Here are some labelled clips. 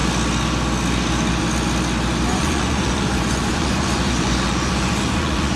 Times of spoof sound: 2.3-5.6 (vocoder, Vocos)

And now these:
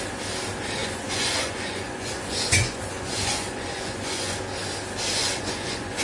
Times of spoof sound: 0.8-4.4 (vocoder, Vocos); 5.2-6.0

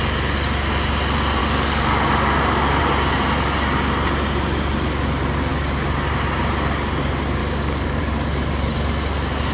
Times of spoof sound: 1.4-2.8 (codec, DAC); 7.4-8.0

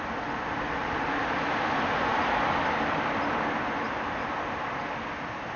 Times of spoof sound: none

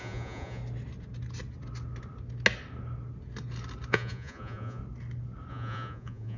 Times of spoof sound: 0.0-0.6 (vocoder, Vocos); 3.9-4.8; 5.5-6.4

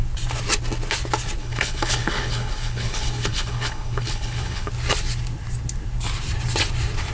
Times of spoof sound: 1.4-4.7 (codec, HILCodec)